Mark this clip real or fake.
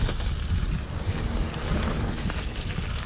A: real